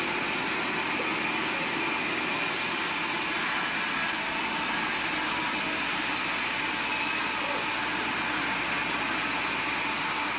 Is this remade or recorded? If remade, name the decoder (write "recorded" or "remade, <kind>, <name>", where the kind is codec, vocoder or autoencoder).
recorded